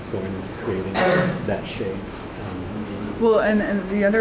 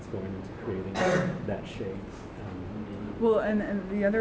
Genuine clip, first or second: second